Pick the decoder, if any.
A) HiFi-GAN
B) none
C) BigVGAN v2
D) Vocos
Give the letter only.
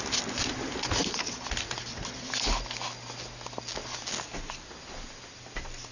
B